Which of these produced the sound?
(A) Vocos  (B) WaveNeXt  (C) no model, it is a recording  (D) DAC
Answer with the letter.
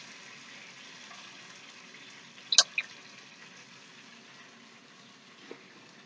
C